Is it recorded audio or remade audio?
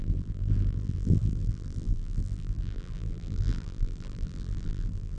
remade